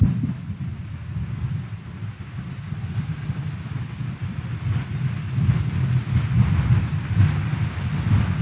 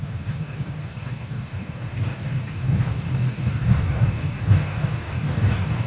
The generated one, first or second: second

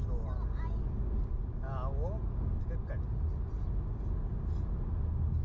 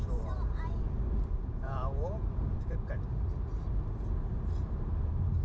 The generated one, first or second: second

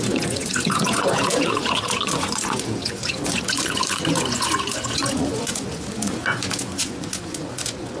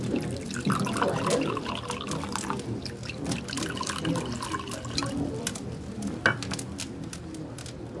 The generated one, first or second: first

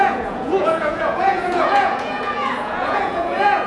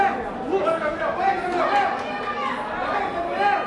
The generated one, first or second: first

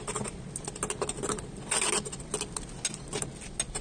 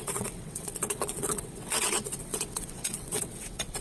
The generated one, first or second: second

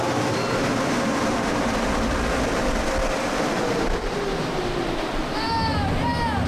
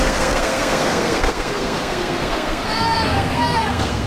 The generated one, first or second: second